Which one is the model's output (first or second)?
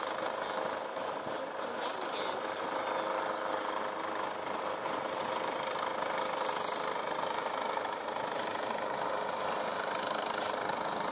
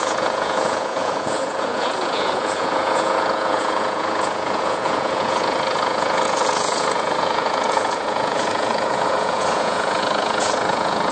second